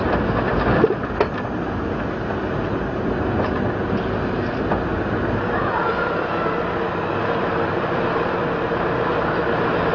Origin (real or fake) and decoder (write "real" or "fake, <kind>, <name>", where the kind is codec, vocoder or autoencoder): fake, vocoder, BigVGAN v2